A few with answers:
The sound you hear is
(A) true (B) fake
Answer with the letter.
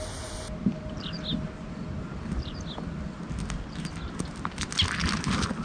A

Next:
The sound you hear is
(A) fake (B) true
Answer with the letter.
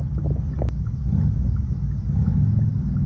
B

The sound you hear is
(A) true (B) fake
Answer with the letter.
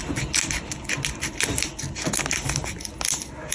A